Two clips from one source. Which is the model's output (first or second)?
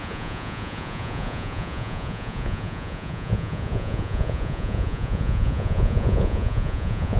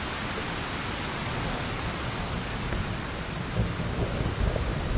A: first